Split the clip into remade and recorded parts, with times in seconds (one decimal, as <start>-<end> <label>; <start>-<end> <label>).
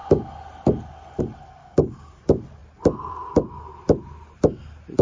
0.0-1.6 recorded; 1.6-2.2 remade; 2.2-5.0 recorded